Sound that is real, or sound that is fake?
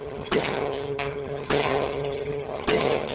fake